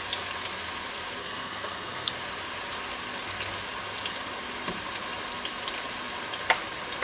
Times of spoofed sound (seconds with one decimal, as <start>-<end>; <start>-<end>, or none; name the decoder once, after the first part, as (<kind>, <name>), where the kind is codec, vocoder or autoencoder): 1.2-2.1 (codec, SNAC)